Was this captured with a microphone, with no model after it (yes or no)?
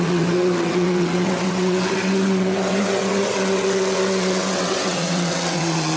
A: no